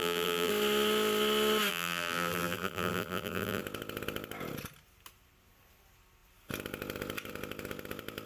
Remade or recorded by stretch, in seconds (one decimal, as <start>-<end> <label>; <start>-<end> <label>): 0.0-0.5 remade; 0.5-1.7 recorded; 1.7-3.6 remade; 3.6-8.2 recorded